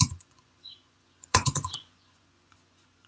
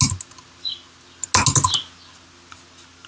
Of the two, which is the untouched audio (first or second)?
second